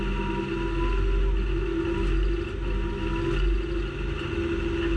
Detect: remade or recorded recorded